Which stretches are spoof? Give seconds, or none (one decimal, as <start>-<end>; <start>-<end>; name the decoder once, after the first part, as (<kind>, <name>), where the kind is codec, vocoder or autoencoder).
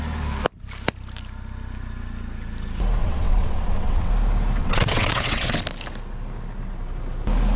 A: 3.0-4.1 (vocoder, WaveNeXt); 4.6-5.6